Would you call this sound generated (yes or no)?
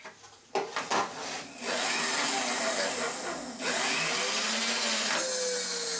no